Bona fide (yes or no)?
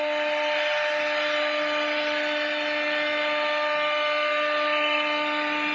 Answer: yes